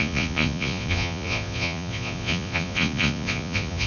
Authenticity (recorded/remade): remade